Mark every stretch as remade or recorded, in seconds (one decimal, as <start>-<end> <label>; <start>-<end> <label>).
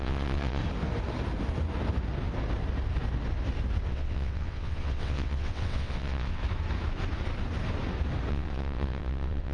0.0-0.6 remade; 0.6-3.9 recorded; 3.9-6.4 remade; 6.4-8.3 recorded; 8.3-9.5 remade